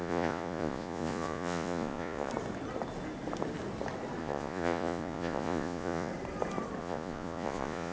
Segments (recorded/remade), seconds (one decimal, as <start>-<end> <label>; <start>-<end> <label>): 0.0-2.3 remade; 2.3-4.2 recorded; 4.2-6.1 remade; 6.1-6.8 recorded; 6.8-7.9 remade